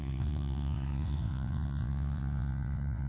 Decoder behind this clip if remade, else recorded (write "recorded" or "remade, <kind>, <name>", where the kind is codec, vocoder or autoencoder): remade, vocoder, WaveNeXt